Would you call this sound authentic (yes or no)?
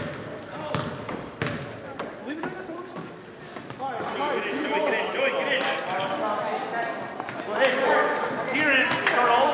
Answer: yes